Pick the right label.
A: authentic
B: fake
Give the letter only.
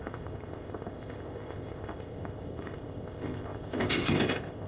B